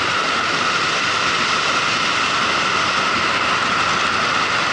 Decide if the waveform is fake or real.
fake